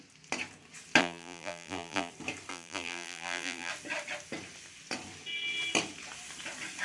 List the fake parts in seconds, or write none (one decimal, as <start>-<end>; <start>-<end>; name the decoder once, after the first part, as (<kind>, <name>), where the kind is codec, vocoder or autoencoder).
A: 1.0-2.1 (vocoder, BigVGAN v2); 2.5-3.7